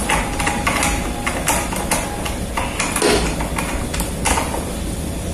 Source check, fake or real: real